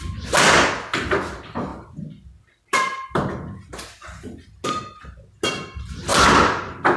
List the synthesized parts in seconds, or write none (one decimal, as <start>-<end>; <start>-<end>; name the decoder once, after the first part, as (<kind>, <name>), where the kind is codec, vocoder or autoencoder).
none